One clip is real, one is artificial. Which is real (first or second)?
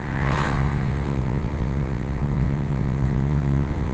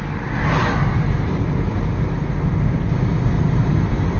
second